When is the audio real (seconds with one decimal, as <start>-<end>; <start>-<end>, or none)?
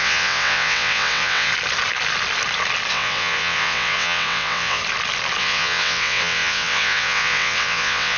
1.5-2.9; 4.8-5.4